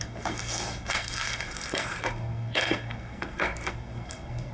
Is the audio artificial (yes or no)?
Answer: yes